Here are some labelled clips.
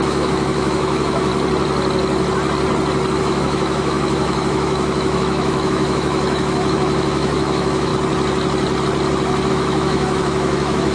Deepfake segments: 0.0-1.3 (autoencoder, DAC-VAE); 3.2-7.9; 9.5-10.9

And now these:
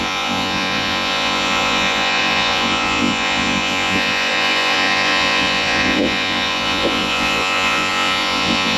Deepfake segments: 0.0-8.8 (vocoder, Vocos)

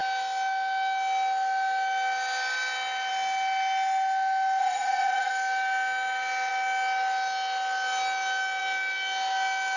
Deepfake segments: 4.6-5.3 (vocoder, Vocos)

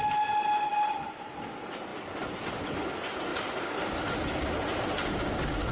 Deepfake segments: 1.9-2.8 (vocoder, BigVGAN v2)

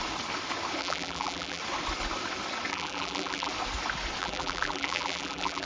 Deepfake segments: 0.8-1.6 (vocoder, BigVGAN v2); 2.7-3.5; 4.2-5.7

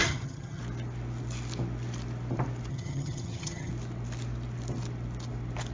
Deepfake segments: 0.0-0.6 (vocoder, HiFi-GAN); 2.7-3.7